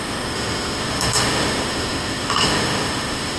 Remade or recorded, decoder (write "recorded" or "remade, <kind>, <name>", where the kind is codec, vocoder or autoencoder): remade, autoencoder, DAC-VAE